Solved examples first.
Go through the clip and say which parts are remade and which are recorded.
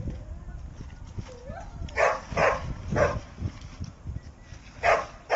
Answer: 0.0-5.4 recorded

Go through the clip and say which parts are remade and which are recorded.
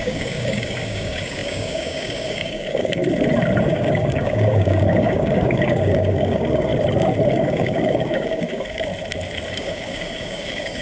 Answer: 0.0-3.0 remade; 3.0-3.6 recorded; 3.6-6.7 remade; 6.7-7.3 recorded; 7.3-8.9 remade; 8.9-9.5 recorded; 9.5-10.8 remade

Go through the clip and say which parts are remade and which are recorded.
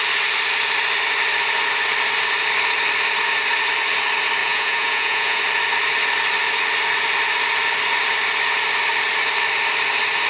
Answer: 0.0-4.4 recorded; 4.4-5.4 remade; 5.4-10.3 recorded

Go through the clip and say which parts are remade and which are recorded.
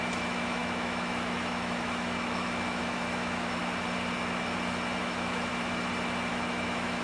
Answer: 0.0-3.6 remade; 3.6-5.0 recorded; 5.0-5.5 remade; 5.5-6.3 recorded; 6.3-7.0 remade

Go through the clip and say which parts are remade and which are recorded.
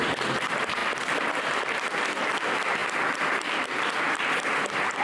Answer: 0.0-5.0 recorded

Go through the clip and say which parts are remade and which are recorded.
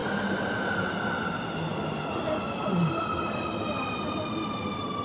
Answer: 0.0-5.0 recorded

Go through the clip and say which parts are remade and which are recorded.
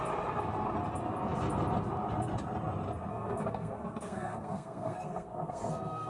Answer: 0.0-3.1 recorded; 3.1-6.1 remade